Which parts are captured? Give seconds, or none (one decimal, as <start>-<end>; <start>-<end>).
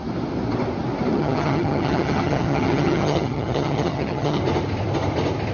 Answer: 0.0-1.1; 4.4-5.5